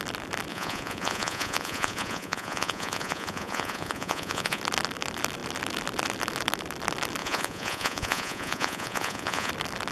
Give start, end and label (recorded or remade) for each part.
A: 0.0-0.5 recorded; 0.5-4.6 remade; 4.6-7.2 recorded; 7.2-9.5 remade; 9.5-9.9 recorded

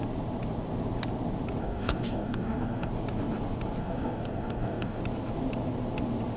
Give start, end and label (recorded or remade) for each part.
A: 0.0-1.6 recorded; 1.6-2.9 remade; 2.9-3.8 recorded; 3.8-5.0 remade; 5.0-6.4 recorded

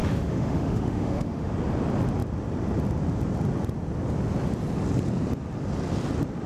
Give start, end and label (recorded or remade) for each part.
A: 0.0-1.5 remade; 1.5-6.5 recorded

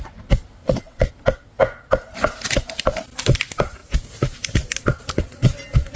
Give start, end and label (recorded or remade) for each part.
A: 0.0-0.6 recorded; 0.6-1.1 remade; 1.1-6.0 recorded

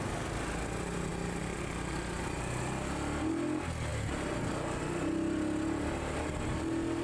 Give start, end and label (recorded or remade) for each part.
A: 0.0-7.0 recorded

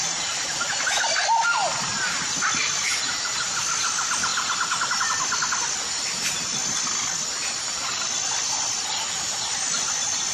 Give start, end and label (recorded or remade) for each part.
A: 0.0-10.3 recorded

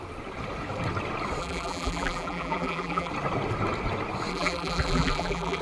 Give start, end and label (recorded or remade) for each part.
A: 0.0-1.4 recorded; 1.4-3.1 remade; 3.1-4.3 recorded; 4.3-5.6 remade